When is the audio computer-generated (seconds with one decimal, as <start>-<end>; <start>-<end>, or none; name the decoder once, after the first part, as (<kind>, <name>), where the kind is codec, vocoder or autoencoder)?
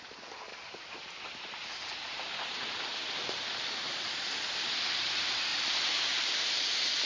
0.5-3.5 (vocoder, BigVGAN v2); 5.5-6.0